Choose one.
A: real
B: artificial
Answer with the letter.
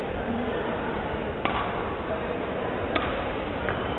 A